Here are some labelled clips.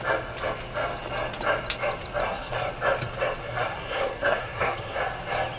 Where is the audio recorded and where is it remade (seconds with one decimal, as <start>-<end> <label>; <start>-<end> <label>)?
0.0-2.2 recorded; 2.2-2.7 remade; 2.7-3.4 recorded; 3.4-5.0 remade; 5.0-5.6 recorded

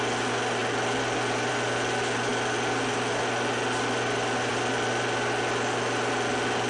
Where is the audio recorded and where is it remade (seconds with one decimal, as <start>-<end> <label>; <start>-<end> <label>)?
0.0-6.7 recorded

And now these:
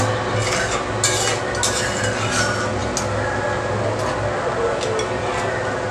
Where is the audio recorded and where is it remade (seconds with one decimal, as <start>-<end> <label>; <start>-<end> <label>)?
0.0-5.9 recorded